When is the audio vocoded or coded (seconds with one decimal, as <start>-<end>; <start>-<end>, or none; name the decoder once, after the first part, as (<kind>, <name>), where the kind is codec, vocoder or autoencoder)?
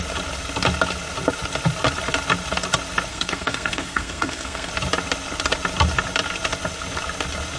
3.1-4.7 (codec, SNAC)